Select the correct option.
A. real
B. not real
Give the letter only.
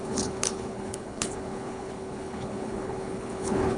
B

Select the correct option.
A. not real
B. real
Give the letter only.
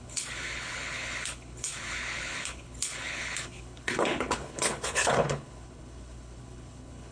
A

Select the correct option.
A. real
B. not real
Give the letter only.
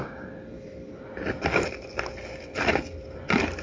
A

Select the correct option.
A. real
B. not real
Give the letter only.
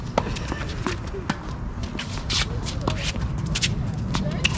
A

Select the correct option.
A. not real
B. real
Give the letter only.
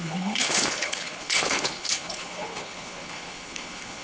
A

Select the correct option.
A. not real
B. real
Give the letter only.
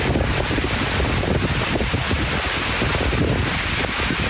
B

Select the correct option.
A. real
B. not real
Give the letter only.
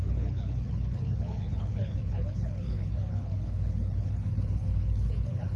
B